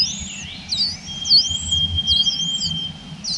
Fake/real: real